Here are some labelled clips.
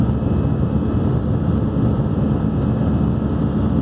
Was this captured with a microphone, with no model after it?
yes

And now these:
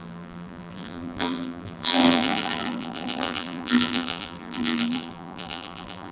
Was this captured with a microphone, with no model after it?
no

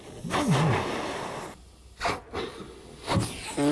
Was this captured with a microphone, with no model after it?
yes